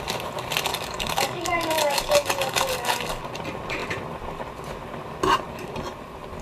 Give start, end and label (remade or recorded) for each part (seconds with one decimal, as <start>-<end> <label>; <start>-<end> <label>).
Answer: 0.0-0.7 recorded; 0.7-3.2 remade; 3.2-6.4 recorded